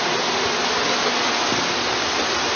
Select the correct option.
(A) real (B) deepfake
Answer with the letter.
A